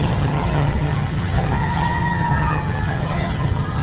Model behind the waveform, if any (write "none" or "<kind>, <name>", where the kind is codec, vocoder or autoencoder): vocoder, HiFi-GAN